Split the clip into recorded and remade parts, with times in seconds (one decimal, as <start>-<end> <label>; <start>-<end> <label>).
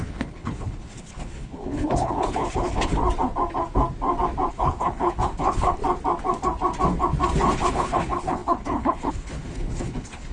0.0-2.9 remade; 2.9-4.5 recorded; 4.5-5.8 remade; 5.8-7.7 recorded; 7.7-10.3 remade